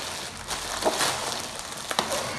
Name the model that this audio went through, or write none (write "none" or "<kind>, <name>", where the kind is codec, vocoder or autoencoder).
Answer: none